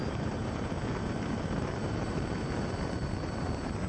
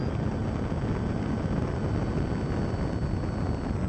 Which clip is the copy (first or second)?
first